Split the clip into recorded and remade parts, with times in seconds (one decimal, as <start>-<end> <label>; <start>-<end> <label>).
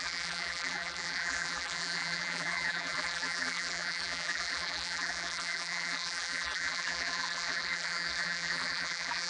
0.0-9.3 remade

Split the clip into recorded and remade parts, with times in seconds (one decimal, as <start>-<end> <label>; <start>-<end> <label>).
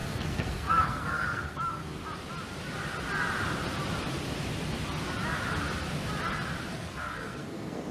0.0-2.0 remade; 2.0-6.7 recorded; 6.7-7.9 remade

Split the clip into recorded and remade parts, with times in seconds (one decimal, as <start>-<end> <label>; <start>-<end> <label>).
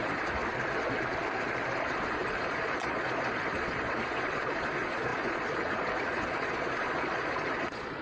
0.0-0.4 remade; 0.4-1.8 recorded; 1.8-8.0 remade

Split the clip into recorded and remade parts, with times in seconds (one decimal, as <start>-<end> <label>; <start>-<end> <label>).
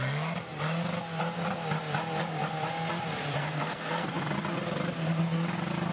0.0-3.4 recorded; 3.4-4.1 remade; 4.1-5.9 recorded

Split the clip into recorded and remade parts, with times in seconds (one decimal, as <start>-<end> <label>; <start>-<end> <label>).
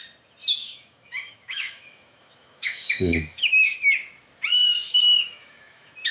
0.0-0.4 recorded; 0.4-3.8 remade; 3.8-4.6 recorded; 4.6-6.1 remade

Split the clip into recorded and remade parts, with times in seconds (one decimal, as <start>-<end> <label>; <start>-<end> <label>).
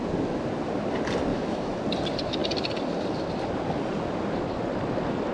0.0-1.3 recorded; 1.3-1.8 remade; 1.8-5.3 recorded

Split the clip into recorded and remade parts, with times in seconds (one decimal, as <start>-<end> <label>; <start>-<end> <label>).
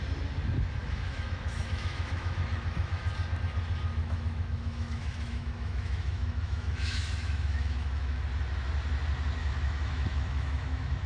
0.0-0.8 recorded; 0.8-3.1 remade; 3.1-4.0 recorded; 4.0-8.2 remade; 8.2-9.4 recorded; 9.4-11.1 remade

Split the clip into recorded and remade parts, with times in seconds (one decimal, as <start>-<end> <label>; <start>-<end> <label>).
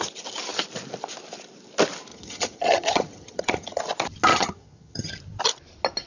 0.0-2.1 recorded; 2.1-3.8 remade; 3.8-4.3 recorded; 4.3-5.1 remade; 5.1-6.1 recorded